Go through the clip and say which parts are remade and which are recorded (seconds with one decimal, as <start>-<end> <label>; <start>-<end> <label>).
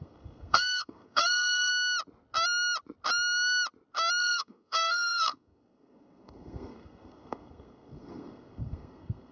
0.0-1.7 remade; 1.7-4.2 recorded; 4.2-9.3 remade